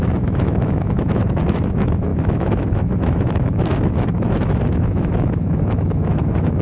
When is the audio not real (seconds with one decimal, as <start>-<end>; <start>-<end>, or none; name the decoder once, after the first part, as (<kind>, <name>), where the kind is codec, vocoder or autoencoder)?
0.0-6.6 (autoencoder, DAC-VAE)